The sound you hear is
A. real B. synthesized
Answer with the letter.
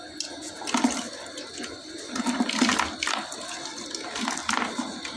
A